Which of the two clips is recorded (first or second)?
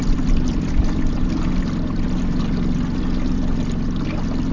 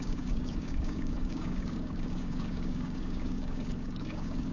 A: first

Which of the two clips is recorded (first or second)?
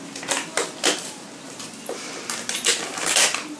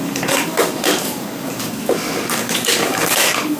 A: first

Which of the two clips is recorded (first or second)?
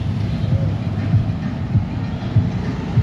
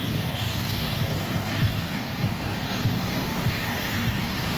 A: first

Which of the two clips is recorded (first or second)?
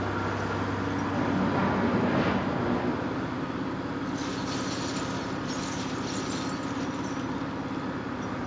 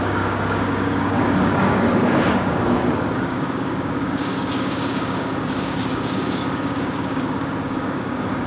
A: first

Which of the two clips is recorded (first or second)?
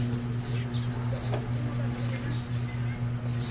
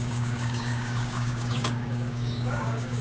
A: first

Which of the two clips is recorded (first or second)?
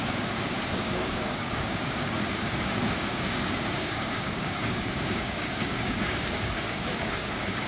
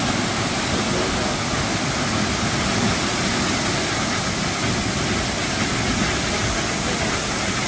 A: second